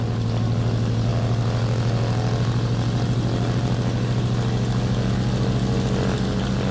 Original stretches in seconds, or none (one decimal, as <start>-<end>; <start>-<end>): 0.0-6.7